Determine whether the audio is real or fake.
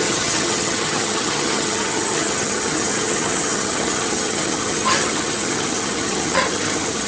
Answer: fake